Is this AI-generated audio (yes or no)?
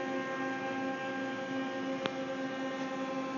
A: no